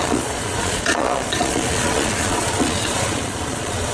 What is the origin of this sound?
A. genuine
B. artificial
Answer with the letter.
B